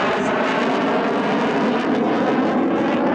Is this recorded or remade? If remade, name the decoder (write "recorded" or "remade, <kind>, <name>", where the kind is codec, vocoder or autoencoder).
recorded